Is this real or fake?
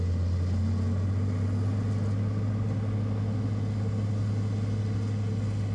real